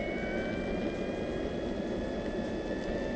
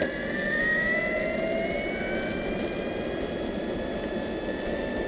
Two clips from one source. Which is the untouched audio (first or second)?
first